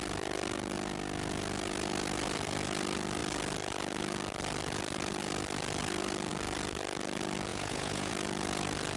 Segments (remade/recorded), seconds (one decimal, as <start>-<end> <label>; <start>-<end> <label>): 0.0-7.5 recorded; 7.5-8.1 remade; 8.1-9.0 recorded